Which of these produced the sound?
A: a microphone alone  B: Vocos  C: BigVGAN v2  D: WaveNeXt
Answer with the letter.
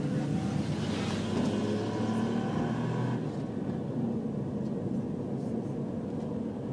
A